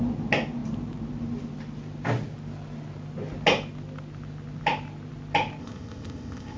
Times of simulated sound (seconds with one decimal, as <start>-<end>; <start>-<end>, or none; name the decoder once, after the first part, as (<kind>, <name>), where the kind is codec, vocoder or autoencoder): 5.6-6.6 (codec, ZipCodec)